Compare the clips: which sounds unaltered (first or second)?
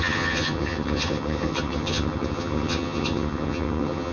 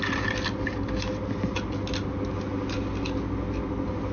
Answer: second